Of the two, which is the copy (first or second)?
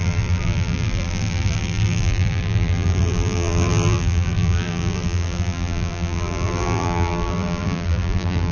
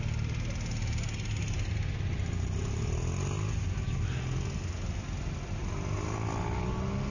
first